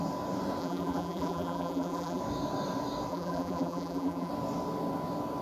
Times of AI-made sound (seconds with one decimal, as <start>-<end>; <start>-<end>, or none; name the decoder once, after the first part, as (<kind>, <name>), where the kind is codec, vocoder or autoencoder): 0.6-2.2 (vocoder, BigVGAN v2); 3.1-4.3